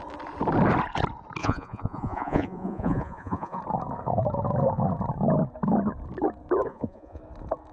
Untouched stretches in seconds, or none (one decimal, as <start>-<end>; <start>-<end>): 0.0-1.4; 3.6-6.7; 7.2-7.7